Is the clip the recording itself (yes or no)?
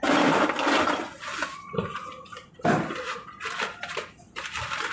yes